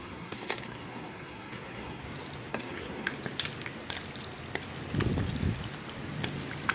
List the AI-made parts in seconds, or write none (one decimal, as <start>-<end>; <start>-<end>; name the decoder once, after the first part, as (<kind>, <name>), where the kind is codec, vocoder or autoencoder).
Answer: 0.0-2.0 (codec, SNAC); 2.5-3.1